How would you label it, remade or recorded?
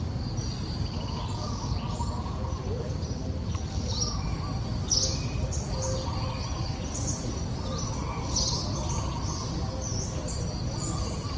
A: recorded